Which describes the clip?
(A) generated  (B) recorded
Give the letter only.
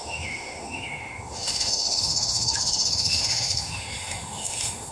A